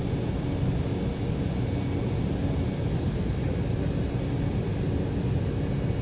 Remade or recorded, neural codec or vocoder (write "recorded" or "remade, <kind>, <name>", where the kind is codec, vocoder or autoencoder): recorded